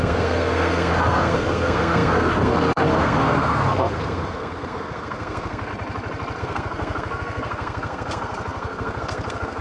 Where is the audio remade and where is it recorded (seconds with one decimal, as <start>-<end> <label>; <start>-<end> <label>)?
0.0-5.7 remade; 5.7-6.4 recorded; 6.4-9.6 remade